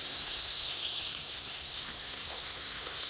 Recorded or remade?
remade